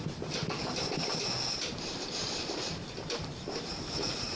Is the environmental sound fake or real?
fake